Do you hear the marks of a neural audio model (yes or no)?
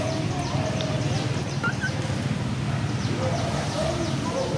no